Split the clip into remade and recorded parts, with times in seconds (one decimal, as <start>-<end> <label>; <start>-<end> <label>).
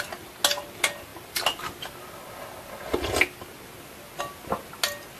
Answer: 0.0-5.2 recorded